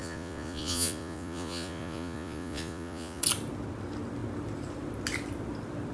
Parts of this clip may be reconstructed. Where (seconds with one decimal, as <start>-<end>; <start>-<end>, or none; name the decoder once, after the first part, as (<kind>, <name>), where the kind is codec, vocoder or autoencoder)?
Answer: 0.0-3.2 (vocoder, Vocos)